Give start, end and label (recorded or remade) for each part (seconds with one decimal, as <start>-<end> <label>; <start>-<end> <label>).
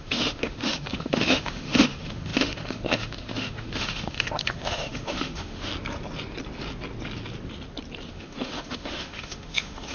0.0-5.7 remade; 5.7-8.1 recorded; 8.1-9.9 remade